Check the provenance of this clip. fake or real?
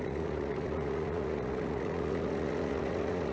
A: fake